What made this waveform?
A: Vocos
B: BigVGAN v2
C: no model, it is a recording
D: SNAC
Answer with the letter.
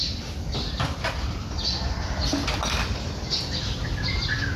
B